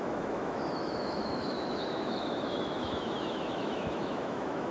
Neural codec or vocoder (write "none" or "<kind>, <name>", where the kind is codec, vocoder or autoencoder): autoencoder, DAC-VAE